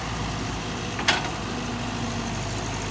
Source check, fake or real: real